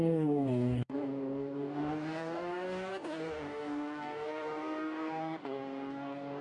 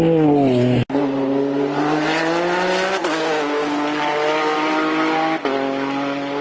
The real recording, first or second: second